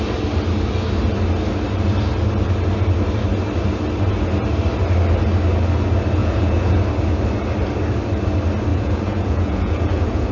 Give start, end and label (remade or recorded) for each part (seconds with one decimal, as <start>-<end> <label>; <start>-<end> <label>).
0.0-6.2 recorded; 6.2-6.8 remade; 6.8-8.7 recorded; 8.7-10.3 remade